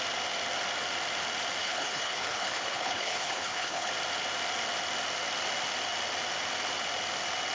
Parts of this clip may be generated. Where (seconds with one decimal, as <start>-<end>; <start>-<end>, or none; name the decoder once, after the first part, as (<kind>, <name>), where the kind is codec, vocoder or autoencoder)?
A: 1.6-3.9 (codec, HILCodec)